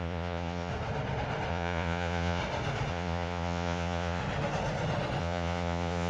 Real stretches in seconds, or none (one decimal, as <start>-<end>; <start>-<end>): 0.7-1.5; 2.4-2.9; 4.2-5.2